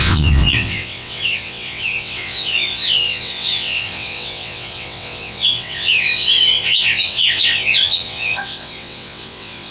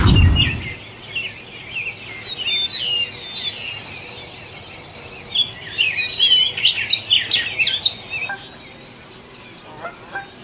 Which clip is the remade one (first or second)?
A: first